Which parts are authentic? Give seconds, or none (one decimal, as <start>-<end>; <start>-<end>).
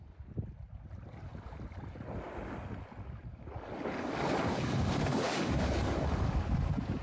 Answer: 0.0-3.3; 6.6-7.0